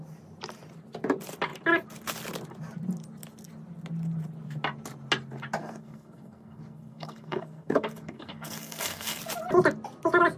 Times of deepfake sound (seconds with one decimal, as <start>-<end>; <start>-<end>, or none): 5.6-9.2